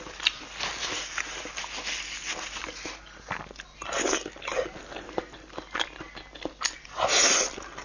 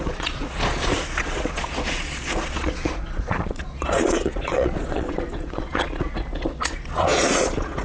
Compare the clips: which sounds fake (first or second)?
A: second